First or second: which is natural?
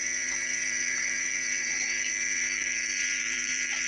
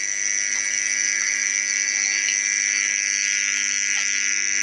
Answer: second